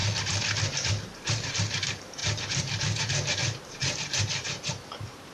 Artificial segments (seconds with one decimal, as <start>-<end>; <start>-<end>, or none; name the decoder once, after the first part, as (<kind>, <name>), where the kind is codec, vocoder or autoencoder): 0.9-5.3 (vocoder, BigVGAN v2)